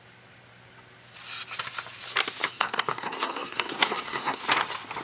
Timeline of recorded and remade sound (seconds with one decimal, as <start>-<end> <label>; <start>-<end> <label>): 0.0-2.4 recorded; 2.4-4.4 remade; 4.4-5.0 recorded